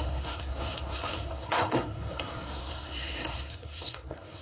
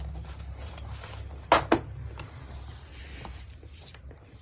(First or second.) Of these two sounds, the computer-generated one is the first